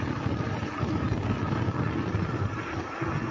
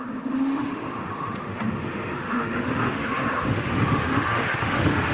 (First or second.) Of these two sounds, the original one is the first